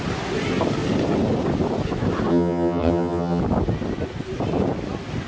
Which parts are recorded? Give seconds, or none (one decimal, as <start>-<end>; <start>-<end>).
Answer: 0.0-2.3; 3.4-5.3